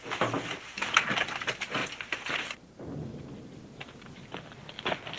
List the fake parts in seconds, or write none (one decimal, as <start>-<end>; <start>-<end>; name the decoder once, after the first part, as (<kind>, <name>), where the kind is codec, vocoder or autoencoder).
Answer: none